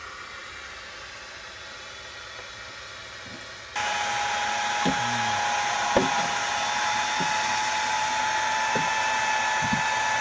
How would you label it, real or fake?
real